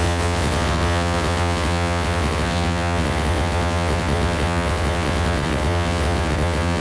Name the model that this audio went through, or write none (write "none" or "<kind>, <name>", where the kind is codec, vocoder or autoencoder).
vocoder, WaveNeXt